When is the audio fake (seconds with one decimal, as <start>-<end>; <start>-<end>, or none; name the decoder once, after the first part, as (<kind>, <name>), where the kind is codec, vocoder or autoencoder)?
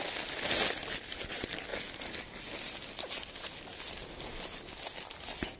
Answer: none